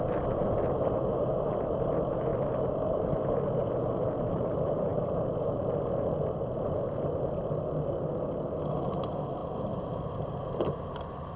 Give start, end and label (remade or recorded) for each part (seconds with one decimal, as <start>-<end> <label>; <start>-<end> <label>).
0.0-11.4 recorded